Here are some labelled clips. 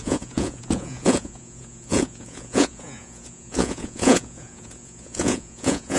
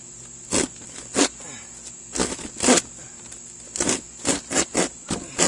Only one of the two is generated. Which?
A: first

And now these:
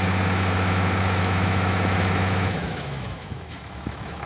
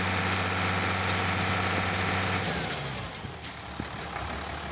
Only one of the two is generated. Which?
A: first